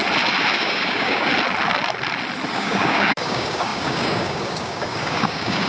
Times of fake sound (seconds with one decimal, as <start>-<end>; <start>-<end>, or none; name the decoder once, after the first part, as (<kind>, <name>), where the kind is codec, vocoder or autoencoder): 0.6-1.3 (codec, DAC); 2.5-5.7